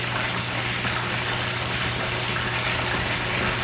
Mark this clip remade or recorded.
recorded